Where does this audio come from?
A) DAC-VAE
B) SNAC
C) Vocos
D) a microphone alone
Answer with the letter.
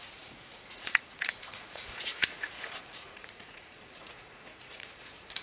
C